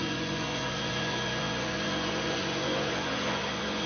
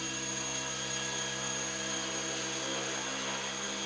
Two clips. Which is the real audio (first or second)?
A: second